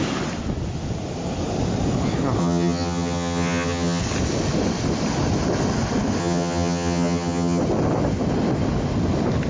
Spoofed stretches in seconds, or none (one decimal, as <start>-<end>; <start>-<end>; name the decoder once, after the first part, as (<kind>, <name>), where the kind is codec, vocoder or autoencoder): 2.4-4.0 (vocoder, HiFi-GAN); 6.2-7.6